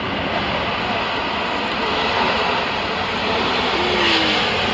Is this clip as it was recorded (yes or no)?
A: yes